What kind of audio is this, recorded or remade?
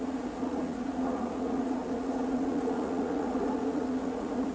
remade